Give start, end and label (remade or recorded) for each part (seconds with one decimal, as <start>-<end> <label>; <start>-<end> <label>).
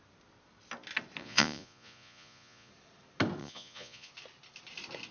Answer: 0.0-1.2 recorded; 1.2-2.7 remade; 2.7-3.4 recorded; 3.4-4.1 remade; 4.1-5.1 recorded